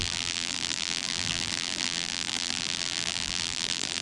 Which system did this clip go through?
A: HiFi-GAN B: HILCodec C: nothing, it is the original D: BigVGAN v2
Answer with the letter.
D